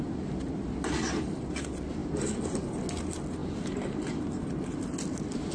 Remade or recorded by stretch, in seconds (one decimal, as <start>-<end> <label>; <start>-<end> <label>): 0.0-2.0 recorded; 2.0-2.6 remade; 2.6-5.5 recorded